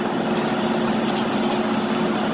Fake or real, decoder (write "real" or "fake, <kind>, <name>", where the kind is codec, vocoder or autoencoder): real